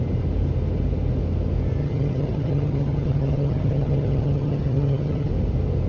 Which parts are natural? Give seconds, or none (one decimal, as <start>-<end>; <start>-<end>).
0.0-1.8; 5.3-5.9